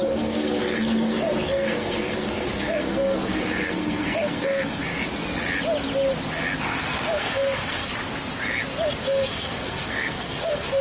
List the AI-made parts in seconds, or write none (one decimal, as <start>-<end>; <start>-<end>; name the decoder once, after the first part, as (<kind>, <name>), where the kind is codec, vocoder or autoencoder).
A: 0.0-4.9 (codec, SNAC); 6.6-7.9; 9.0-10.8